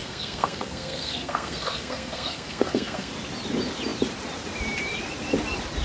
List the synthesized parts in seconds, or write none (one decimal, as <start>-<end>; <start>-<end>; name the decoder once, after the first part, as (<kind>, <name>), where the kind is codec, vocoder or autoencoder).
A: 0.0-3.1 (codec, SNAC)